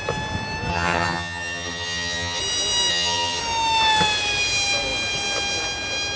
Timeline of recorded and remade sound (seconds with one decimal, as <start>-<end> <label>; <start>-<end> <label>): 0.0-0.7 recorded; 0.7-2.4 remade; 2.4-2.9 recorded; 2.9-3.4 remade; 3.4-6.2 recorded